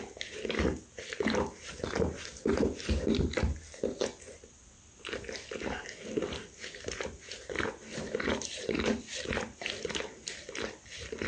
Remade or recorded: recorded